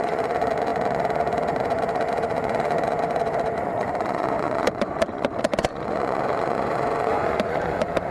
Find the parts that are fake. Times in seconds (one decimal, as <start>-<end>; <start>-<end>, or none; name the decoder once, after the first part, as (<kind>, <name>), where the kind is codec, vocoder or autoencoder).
0.0-8.1 (vocoder, Vocos)